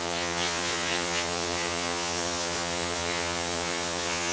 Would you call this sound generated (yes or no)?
yes